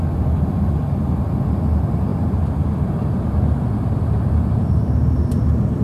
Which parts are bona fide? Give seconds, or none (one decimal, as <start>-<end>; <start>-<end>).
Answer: 0.0-2.1